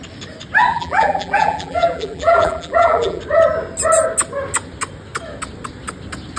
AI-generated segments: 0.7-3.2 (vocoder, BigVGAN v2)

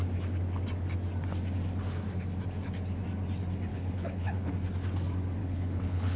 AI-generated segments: 3.7-4.5 (codec, HILCodec); 5.4-6.2

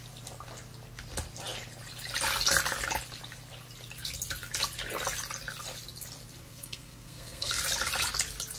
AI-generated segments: 6.5-7.6 (codec, SNAC)

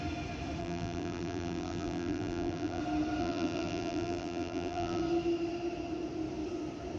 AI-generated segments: 0.6-2.8 (vocoder, BigVGAN v2); 3.2-5.0

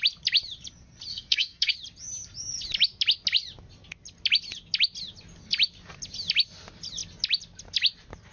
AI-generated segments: 1.1-1.7 (codec, SNAC)

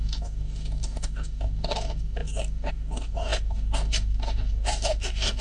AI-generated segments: 0.0-5.4 (codec, DAC)

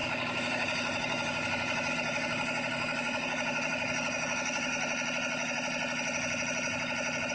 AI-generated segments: 0.0-4.7 (codec, DAC)